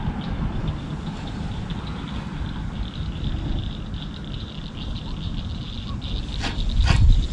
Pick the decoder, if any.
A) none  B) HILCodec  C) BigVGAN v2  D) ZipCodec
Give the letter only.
A